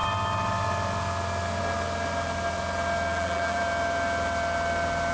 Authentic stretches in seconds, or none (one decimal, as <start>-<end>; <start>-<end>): 0.0-3.1; 3.6-5.1